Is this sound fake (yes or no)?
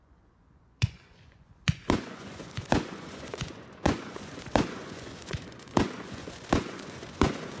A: yes